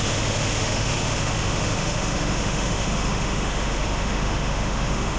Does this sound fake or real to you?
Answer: fake